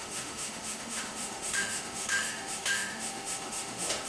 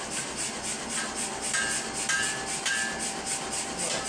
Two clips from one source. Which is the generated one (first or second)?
first